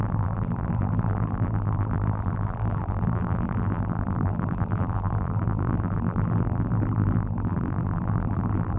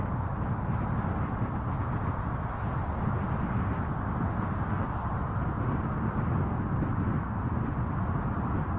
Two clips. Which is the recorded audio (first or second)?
second